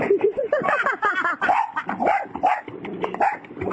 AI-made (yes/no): yes